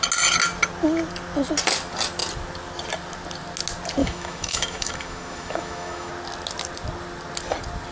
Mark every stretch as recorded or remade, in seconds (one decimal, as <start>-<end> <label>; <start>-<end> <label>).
0.0-4.0 recorded; 4.0-6.1 remade; 6.1-7.9 recorded